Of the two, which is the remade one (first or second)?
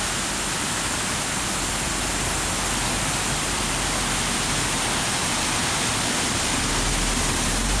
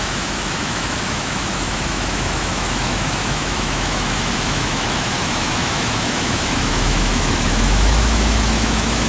second